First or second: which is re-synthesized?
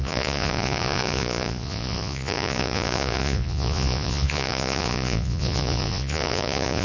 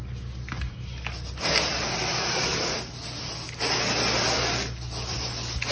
first